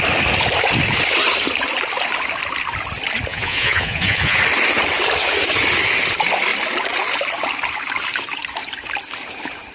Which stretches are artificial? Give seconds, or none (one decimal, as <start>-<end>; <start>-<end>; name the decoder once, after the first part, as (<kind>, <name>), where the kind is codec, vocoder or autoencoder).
3.3-4.4 (vocoder, Vocos)